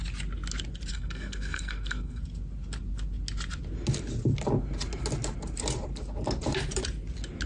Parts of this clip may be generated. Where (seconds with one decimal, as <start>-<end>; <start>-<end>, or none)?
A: 0.9-2.2